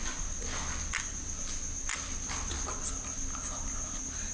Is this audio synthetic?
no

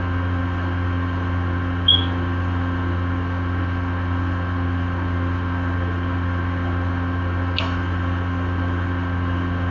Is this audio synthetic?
no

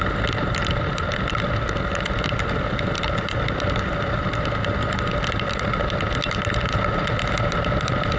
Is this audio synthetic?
no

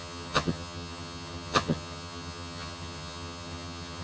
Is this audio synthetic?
yes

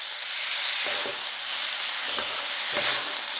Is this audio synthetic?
no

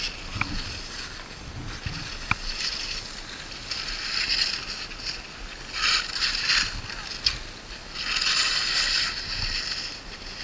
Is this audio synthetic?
no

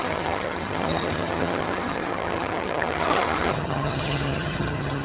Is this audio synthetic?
yes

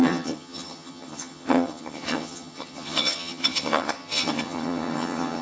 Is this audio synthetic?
yes